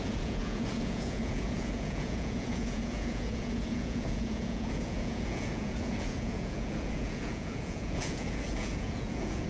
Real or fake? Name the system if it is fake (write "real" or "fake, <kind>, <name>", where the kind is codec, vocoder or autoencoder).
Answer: fake, vocoder, Vocos